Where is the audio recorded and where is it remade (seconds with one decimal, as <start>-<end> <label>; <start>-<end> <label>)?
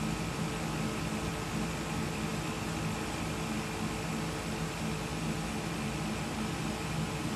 0.0-7.4 recorded